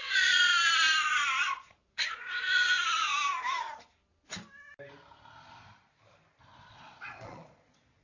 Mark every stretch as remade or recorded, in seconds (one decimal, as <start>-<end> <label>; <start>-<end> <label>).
0.0-0.5 remade; 0.5-1.1 recorded; 1.1-3.1 remade; 3.1-6.4 recorded; 6.4-8.0 remade